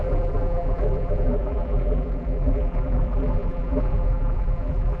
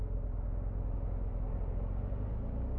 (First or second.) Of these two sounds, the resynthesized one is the first